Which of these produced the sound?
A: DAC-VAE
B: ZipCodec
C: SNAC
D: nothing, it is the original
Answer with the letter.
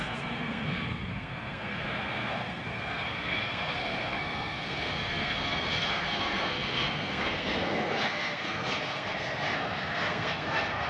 C